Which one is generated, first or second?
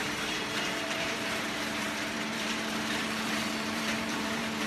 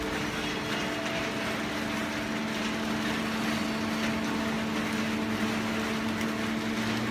first